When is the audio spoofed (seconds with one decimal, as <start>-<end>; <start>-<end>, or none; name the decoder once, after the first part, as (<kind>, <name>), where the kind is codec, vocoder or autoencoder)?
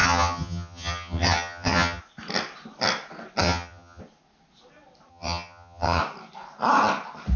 0.0-2.0 (vocoder, HiFi-GAN); 3.4-4.0; 5.1-6.0